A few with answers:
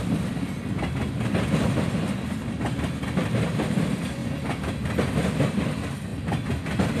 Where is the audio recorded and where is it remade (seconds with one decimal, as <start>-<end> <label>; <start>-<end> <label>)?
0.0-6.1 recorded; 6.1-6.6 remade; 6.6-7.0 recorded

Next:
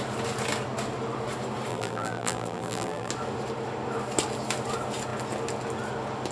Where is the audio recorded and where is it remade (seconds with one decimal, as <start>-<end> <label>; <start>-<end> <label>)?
0.0-1.7 recorded; 1.7-3.1 remade; 3.1-6.3 recorded

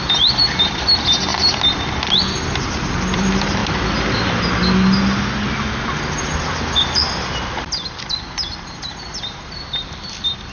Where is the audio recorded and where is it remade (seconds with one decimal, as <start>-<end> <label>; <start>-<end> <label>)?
0.0-1.3 remade; 1.3-2.7 recorded; 2.7-3.6 remade; 3.6-6.2 recorded; 6.2-10.5 remade

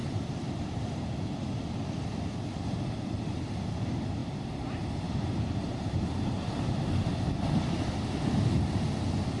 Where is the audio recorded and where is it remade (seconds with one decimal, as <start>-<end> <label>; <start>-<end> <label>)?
0.0-4.2 recorded; 4.2-7.8 remade; 7.8-9.4 recorded

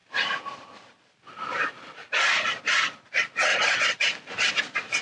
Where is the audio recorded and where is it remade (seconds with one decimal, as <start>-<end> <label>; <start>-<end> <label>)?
0.0-2.6 remade; 2.6-3.5 recorded; 3.5-4.6 remade; 4.6-5.0 recorded

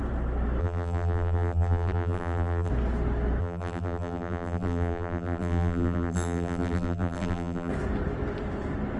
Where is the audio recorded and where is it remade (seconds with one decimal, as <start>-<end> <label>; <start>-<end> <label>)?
0.0-0.6 recorded; 0.6-2.7 remade; 2.7-3.4 recorded; 3.4-7.7 remade; 7.7-9.0 recorded

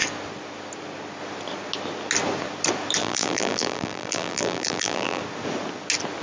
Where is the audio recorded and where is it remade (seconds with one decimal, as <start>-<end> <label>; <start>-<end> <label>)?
0.0-3.0 recorded; 3.0-5.2 remade; 5.2-6.2 recorded

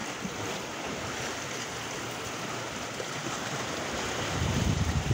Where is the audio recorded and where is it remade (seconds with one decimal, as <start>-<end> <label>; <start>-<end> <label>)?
0.0-3.1 recorded; 3.1-5.1 remade